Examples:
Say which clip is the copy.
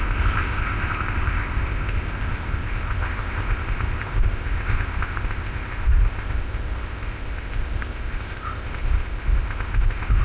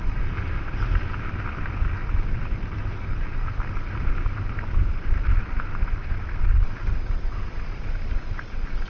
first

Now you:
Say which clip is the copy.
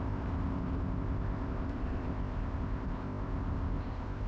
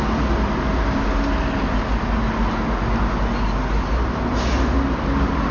first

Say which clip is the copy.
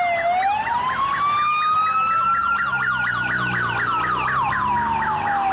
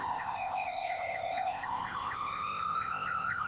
second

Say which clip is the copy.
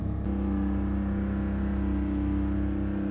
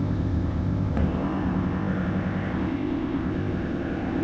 second